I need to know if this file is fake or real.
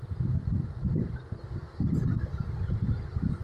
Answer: real